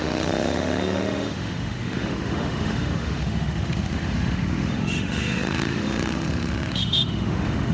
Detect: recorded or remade remade